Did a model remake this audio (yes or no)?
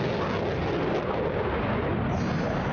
no